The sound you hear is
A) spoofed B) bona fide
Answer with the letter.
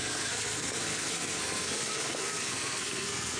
A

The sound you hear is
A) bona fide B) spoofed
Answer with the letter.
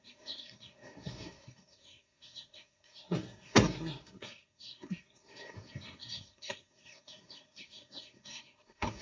B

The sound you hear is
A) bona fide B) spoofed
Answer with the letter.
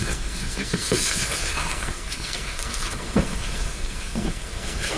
B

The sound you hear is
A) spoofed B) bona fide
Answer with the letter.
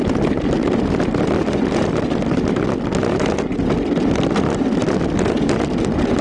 B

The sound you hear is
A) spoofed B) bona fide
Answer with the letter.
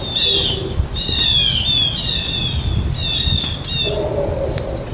B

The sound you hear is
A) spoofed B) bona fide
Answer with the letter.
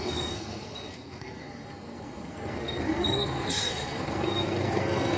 A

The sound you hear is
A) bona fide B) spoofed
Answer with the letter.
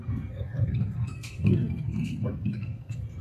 B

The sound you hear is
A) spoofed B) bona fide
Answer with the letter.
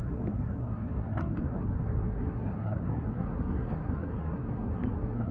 A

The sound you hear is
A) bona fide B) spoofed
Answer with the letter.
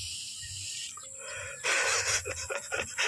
A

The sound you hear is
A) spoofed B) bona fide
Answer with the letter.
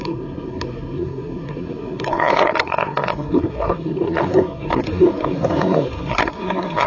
A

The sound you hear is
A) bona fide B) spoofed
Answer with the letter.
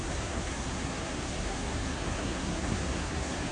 B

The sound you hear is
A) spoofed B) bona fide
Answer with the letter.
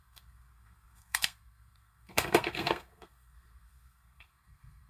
A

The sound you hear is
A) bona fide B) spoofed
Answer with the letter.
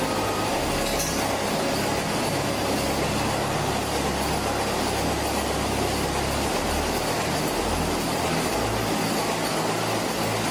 A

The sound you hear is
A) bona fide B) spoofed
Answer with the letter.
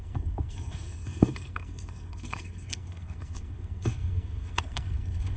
B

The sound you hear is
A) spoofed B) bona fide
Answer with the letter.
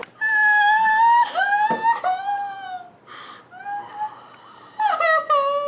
B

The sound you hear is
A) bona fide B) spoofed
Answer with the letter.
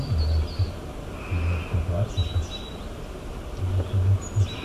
A